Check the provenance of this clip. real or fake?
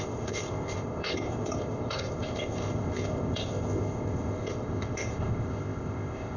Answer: fake